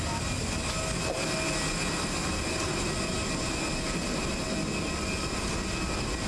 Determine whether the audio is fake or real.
real